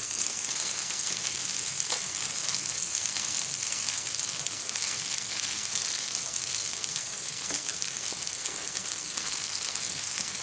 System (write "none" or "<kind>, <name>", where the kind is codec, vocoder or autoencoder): codec, SNAC